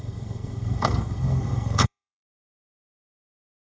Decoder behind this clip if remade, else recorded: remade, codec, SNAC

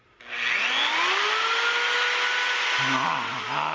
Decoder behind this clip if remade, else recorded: recorded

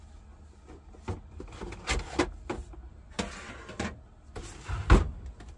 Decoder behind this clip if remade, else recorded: recorded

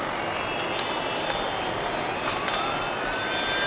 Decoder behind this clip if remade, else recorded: recorded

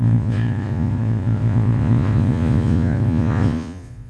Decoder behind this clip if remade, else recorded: remade, vocoder, Vocos